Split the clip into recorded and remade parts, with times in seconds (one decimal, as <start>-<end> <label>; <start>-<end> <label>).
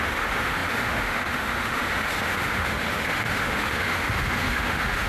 0.0-5.1 remade